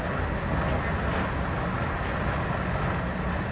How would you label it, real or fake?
real